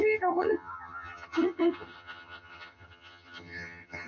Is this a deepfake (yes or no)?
yes